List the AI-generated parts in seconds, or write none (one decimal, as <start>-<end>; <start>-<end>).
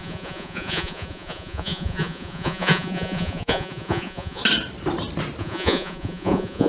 0.0-4.4; 5.4-6.7